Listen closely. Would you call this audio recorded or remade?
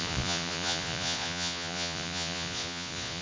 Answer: remade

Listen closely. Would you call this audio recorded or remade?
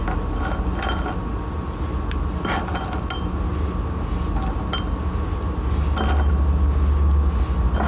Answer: recorded